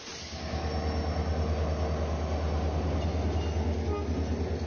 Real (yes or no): yes